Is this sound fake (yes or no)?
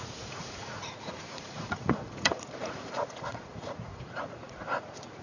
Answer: yes